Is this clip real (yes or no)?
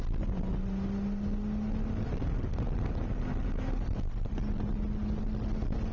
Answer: yes